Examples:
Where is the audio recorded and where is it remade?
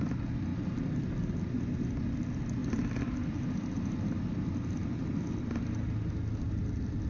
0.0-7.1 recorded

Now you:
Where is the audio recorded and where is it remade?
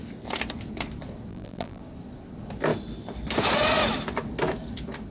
0.0-1.3 recorded; 1.3-1.8 remade; 1.8-5.1 recorded